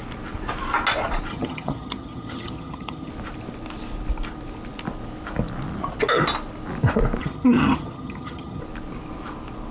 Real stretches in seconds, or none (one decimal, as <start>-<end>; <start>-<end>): 0.0-1.3; 3.1-7.2; 8.6-9.7